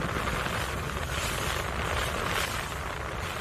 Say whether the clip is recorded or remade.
recorded